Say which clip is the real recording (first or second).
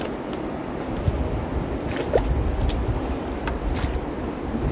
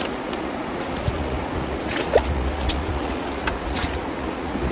first